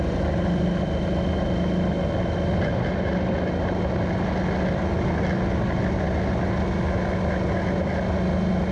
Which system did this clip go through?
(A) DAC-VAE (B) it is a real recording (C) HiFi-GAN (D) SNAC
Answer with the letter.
B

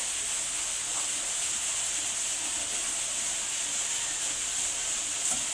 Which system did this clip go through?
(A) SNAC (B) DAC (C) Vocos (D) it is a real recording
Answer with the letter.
D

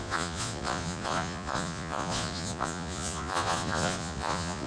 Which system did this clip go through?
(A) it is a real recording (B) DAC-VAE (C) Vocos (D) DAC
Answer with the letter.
C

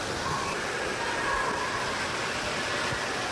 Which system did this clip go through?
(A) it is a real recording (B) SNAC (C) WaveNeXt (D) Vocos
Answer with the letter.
A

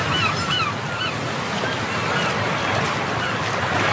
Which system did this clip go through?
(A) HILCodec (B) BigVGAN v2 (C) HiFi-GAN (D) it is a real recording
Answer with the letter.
D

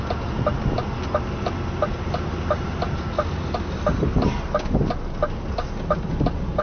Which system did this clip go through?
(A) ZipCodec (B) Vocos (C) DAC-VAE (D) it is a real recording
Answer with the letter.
D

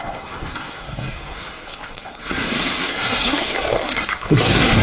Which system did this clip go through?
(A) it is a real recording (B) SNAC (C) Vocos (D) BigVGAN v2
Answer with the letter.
B